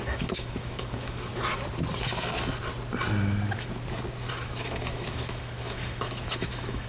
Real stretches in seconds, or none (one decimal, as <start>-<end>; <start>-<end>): 1.3-4.3